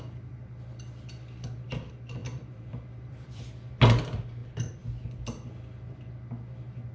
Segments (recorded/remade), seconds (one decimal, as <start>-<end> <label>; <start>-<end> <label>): 0.0-2.2 recorded; 2.2-3.7 remade; 3.7-6.9 recorded